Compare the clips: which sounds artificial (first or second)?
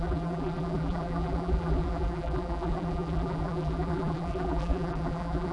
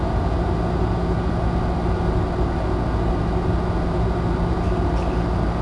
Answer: first